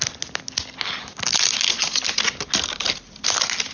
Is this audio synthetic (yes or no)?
no